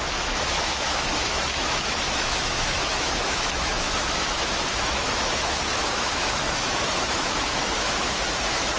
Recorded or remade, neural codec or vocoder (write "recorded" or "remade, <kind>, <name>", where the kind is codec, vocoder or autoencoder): remade, autoencoder, DAC-VAE